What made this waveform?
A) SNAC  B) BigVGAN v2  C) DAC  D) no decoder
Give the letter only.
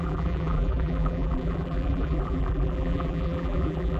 B